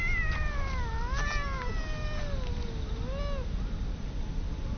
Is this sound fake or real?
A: real